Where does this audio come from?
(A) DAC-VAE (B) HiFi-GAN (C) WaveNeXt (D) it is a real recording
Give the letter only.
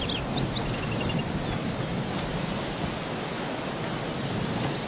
D